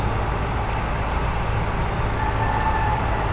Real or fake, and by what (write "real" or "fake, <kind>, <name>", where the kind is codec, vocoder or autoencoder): real